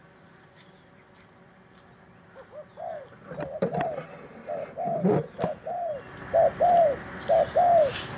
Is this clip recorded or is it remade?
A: recorded